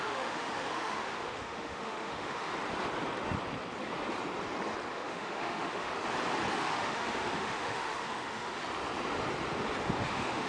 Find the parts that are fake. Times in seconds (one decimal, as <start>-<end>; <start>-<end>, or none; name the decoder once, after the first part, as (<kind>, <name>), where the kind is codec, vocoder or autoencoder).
0.0-2.5 (autoencoder, DAC-VAE); 4.9-5.9; 6.5-8.6; 10.0-10.5